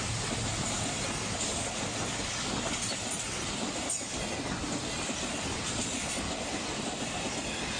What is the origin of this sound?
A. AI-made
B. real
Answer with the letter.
B